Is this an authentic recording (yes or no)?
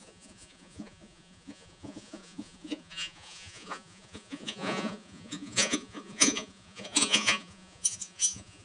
no